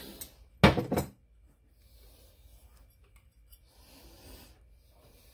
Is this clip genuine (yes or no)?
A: yes